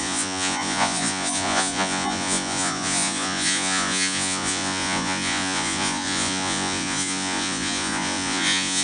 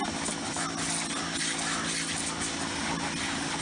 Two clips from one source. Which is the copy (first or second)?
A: first